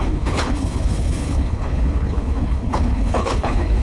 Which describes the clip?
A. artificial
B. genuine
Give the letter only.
A